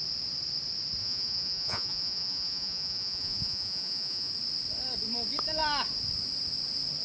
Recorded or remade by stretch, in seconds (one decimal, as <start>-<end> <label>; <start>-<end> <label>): 0.0-1.0 recorded; 1.0-4.3 remade; 4.3-7.0 recorded